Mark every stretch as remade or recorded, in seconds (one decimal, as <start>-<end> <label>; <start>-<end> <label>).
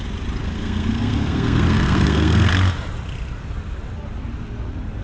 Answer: 0.0-0.4 recorded; 0.4-2.5 remade; 2.5-5.0 recorded